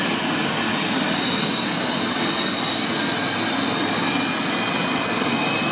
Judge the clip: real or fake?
real